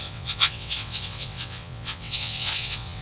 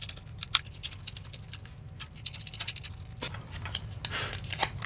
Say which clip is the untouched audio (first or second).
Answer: second